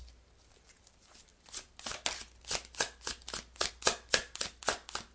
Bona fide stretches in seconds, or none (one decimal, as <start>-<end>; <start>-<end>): 0.0-5.1